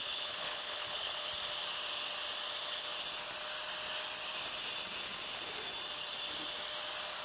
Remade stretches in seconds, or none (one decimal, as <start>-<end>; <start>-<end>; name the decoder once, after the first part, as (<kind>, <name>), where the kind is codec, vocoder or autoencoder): 0.0-1.3 (codec, HILCodec)